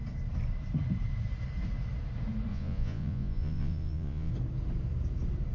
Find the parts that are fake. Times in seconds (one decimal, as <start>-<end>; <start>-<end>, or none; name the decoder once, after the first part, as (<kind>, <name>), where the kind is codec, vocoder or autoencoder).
2.5-4.3 (vocoder, Vocos)